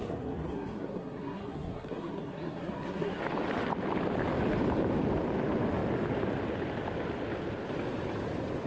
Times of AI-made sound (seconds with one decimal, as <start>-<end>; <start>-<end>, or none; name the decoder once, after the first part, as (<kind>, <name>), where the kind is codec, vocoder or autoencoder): 0.0-3.2 (codec, SNAC)